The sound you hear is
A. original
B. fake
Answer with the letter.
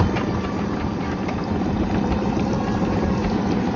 A